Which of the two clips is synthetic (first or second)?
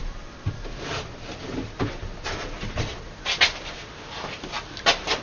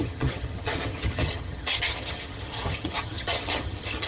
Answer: second